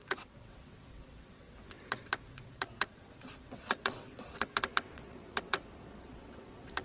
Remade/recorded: remade